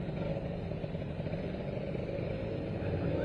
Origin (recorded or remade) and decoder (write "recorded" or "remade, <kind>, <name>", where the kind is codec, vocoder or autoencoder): recorded